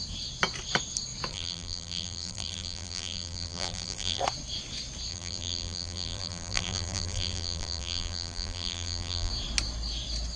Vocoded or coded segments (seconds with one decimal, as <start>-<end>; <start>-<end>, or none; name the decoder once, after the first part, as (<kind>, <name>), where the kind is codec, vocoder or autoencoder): 1.3-4.2 (vocoder, BigVGAN v2); 5.1-9.3